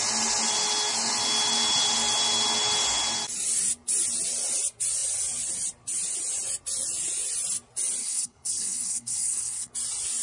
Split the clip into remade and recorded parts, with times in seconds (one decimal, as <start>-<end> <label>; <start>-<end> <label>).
0.0-8.0 recorded; 8.0-9.7 remade; 9.7-10.2 recorded